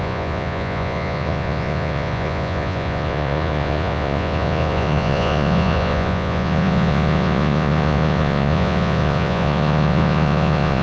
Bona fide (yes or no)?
no